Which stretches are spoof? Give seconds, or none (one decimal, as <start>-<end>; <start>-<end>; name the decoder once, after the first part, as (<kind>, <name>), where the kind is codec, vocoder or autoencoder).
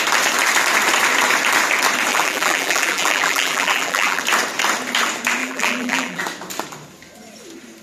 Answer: 2.1-4.2 (vocoder, BigVGAN v2); 5.4-6.2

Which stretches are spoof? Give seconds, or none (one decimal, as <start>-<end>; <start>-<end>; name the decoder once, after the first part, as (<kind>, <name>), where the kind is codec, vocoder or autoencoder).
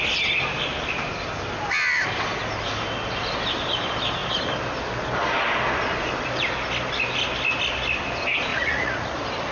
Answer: 8.5-9.1 (vocoder, Vocos)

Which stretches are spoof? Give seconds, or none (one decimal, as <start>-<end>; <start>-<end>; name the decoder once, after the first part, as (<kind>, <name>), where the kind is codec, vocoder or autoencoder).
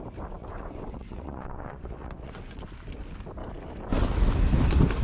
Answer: 0.4-2.6 (vocoder, WaveNeXt)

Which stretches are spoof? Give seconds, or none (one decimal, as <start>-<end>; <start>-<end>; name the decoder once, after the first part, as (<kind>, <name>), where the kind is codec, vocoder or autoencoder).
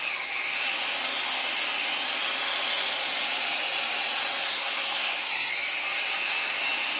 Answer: 4.4-5.5 (codec, SNAC)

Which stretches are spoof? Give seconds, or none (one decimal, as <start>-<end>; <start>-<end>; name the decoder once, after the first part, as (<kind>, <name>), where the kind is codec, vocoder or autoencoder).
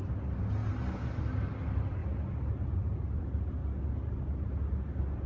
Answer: none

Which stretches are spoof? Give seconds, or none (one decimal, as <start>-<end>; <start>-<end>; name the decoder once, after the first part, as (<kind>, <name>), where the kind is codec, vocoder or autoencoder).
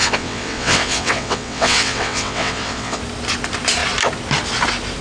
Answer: 0.0-3.0 (vocoder, WaveNeXt)